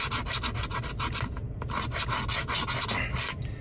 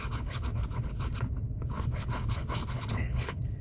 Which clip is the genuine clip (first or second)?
first